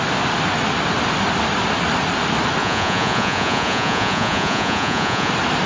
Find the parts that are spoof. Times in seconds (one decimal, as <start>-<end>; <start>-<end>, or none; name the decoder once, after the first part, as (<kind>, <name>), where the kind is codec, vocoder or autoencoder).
2.6-5.3 (vocoder, Vocos)

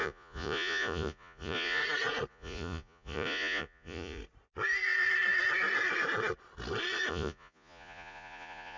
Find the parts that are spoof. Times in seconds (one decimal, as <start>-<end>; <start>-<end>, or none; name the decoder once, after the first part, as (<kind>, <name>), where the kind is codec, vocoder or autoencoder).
0.0-1.8 (vocoder, Vocos); 2.3-4.2; 7.1-8.8

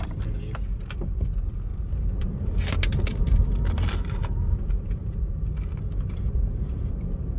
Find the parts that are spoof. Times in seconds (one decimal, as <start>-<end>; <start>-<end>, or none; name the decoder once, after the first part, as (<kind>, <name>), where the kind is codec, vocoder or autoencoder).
1.7-2.2 (vocoder, BigVGAN v2); 3.1-3.9; 5.0-7.4

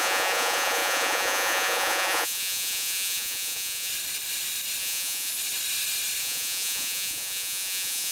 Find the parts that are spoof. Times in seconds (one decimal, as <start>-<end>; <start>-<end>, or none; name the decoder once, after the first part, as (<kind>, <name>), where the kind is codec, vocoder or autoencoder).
0.0-3.9 (vocoder, Vocos); 4.8-5.3; 6.2-8.1

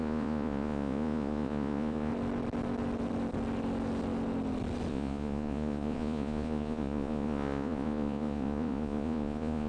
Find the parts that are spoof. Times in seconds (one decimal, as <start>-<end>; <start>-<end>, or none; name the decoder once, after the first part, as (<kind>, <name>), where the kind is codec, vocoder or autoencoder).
0.0-2.1 (vocoder, Vocos); 4.9-9.7

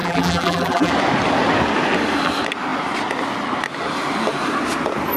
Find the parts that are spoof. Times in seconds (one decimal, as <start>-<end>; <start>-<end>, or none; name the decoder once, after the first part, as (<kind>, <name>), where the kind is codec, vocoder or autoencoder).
0.0-0.9 (vocoder, BigVGAN v2)

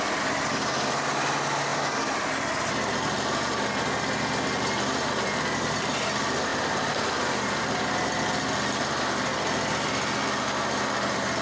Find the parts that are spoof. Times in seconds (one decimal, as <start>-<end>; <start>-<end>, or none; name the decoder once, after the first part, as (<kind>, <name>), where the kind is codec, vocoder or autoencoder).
none

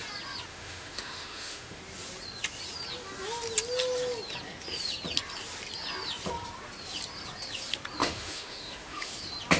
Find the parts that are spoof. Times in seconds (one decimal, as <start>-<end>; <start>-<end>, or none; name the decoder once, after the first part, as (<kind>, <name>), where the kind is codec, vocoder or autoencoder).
0.5-1.8 (autoencoder, DAC-VAE); 8.0-9.1